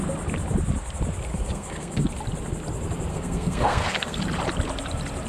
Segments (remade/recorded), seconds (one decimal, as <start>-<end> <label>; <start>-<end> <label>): 0.0-1.3 recorded; 1.3-2.1 remade; 2.1-3.1 recorded; 3.1-4.2 remade; 4.2-5.3 recorded